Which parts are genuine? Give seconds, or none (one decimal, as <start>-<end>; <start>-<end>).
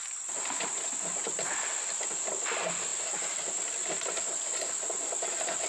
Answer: none